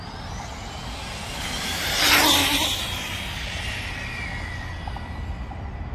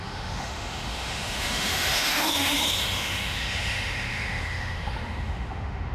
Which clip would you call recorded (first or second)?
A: first